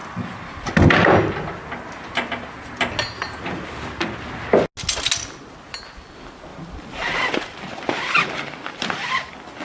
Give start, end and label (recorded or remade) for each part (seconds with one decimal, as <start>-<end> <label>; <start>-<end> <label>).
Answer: 0.0-0.7 remade; 0.7-6.5 recorded; 6.5-9.6 remade